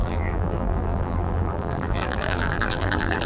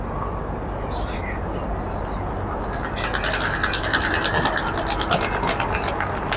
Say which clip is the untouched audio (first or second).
second